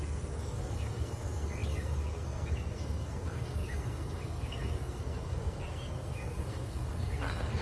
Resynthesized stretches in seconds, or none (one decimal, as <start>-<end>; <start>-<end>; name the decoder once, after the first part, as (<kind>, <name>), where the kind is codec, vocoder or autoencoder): 0.0-7.6 (codec, SNAC)

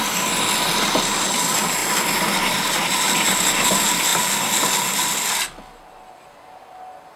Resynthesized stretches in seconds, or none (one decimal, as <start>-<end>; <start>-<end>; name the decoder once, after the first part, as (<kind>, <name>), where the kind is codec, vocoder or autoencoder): none

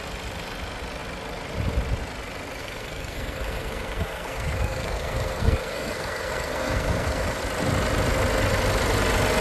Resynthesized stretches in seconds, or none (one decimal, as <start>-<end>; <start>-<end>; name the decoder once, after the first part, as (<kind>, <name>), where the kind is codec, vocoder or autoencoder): 2.6-7.4 (codec, SNAC)